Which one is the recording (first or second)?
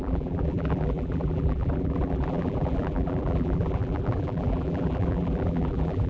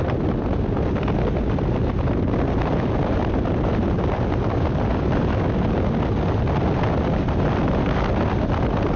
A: second